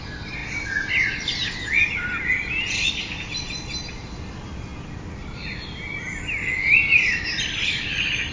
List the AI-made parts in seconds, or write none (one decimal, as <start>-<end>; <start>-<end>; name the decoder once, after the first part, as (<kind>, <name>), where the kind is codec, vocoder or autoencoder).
none